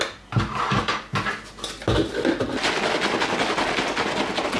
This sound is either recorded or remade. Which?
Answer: recorded